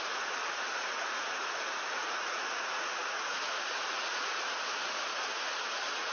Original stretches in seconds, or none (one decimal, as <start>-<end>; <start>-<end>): none